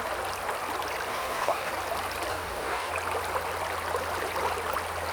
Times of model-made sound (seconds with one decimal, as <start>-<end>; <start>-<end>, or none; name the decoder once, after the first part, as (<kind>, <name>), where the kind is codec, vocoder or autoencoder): 1.1-1.7 (codec, DAC); 2.3-2.9